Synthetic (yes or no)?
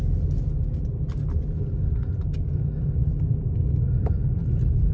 no